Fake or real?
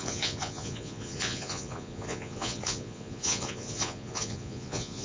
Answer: fake